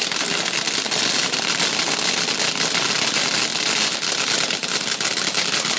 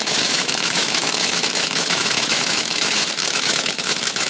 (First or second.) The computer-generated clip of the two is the second